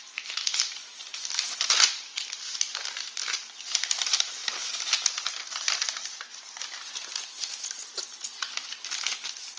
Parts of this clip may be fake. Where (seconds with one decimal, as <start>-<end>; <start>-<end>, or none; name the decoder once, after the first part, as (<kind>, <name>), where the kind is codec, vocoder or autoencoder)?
none